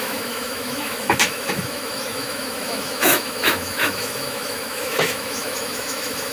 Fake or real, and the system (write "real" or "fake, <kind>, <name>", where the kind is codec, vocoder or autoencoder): fake, autoencoder, DAC-VAE